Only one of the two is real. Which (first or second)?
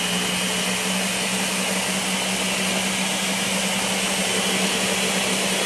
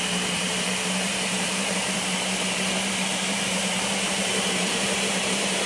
first